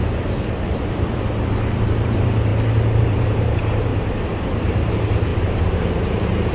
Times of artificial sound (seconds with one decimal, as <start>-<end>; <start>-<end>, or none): 0.0-2.5; 3.0-3.9; 4.5-6.5